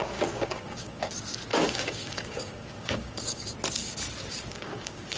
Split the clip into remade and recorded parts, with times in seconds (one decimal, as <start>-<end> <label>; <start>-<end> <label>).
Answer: 0.0-1.1 remade; 1.1-1.5 recorded; 1.5-3.5 remade; 3.5-4.5 recorded; 4.5-5.2 remade